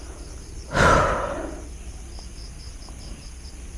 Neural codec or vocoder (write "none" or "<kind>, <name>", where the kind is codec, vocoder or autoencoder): none